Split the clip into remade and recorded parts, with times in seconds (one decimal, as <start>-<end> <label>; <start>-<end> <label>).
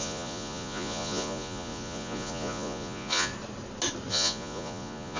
0.0-3.3 remade; 3.3-4.1 recorded; 4.1-5.2 remade